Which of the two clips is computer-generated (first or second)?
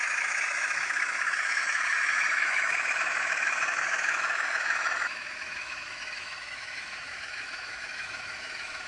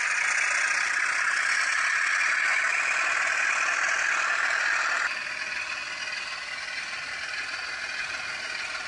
first